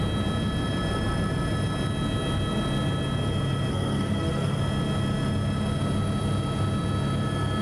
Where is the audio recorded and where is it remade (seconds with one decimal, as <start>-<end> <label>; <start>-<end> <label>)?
0.0-3.7 recorded; 3.7-4.6 remade; 4.6-7.6 recorded